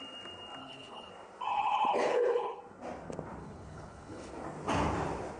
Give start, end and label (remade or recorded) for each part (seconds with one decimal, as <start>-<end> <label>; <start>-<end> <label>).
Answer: 0.0-0.6 recorded; 0.6-1.1 remade; 1.1-1.5 recorded; 1.5-2.6 remade; 2.6-3.4 recorded; 3.4-4.3 remade; 4.3-5.4 recorded

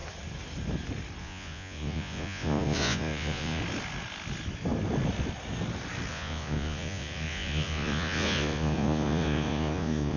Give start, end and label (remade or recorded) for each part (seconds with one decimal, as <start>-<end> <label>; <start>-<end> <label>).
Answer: 0.0-1.2 recorded; 1.2-3.6 remade; 3.6-6.1 recorded; 6.1-10.2 remade